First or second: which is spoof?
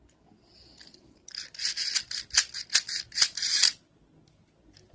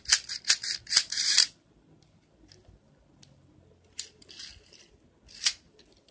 second